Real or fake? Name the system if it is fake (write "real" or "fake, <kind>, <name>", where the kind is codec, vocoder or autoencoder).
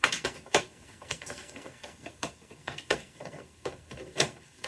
fake, codec, SNAC